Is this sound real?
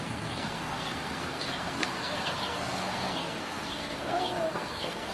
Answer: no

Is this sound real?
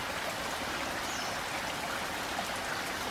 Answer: yes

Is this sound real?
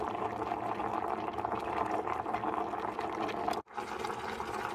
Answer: yes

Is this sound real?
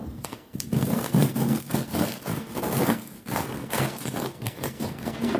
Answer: no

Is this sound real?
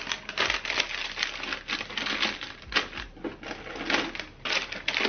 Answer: yes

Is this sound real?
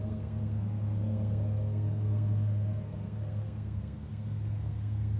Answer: no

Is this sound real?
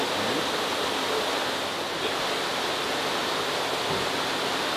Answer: yes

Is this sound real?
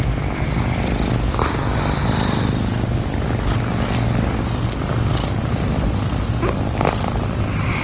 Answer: yes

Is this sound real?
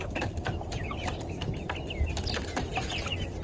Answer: yes